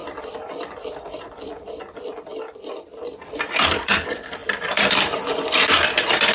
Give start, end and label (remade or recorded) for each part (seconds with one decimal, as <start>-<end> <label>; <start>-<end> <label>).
0.0-4.4 remade; 4.4-5.6 recorded; 5.6-6.3 remade

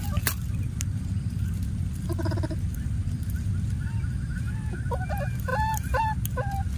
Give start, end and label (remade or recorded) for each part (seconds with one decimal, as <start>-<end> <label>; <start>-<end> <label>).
0.0-6.8 recorded

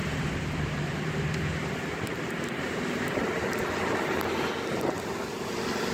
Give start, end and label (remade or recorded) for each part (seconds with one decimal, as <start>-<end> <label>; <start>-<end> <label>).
0.0-3.5 remade; 3.5-5.9 recorded